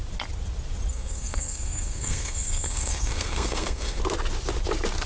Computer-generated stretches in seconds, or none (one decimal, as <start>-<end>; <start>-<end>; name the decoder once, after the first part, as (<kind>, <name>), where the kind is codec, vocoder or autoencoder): 0.9-4.0 (codec, SNAC)